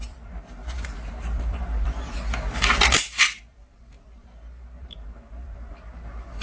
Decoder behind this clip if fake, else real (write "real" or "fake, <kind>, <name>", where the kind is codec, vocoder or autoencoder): fake, vocoder, BigVGAN v2